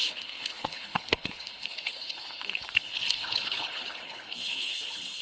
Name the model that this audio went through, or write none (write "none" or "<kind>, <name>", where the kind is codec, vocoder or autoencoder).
codec, HILCodec